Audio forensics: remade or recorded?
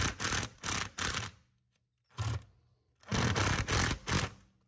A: recorded